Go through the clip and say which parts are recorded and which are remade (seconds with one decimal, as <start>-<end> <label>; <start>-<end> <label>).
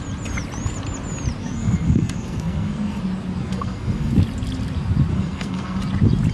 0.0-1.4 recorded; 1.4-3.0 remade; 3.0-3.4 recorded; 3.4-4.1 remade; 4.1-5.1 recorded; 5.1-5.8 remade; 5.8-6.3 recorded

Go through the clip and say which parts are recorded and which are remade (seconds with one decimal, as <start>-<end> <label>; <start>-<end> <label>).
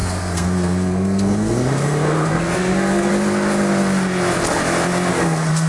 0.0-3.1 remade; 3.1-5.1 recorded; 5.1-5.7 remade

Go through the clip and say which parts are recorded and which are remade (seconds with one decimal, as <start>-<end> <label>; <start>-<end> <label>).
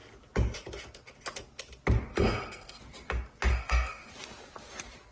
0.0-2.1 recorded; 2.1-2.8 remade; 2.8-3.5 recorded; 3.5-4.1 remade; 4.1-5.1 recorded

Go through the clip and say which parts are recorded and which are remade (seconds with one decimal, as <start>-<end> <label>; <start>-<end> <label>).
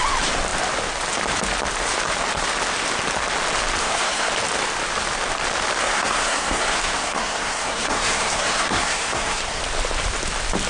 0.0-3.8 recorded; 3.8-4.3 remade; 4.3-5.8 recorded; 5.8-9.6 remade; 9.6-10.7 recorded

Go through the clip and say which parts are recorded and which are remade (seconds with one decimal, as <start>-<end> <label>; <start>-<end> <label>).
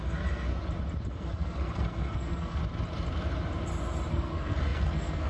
0.0-0.5 remade; 0.5-1.1 recorded; 1.1-2.6 remade; 2.6-4.1 recorded; 4.1-5.3 remade